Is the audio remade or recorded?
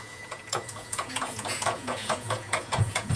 remade